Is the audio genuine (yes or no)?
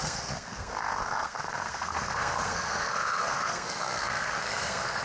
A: no